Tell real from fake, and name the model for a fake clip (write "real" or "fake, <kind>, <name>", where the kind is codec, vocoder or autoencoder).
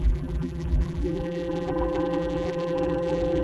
fake, vocoder, BigVGAN v2